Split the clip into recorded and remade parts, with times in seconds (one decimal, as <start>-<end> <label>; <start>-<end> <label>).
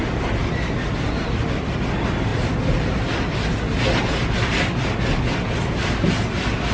0.0-6.7 recorded